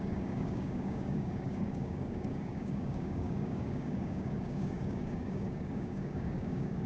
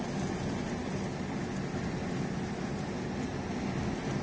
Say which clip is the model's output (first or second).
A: first